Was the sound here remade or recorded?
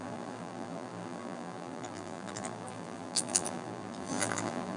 remade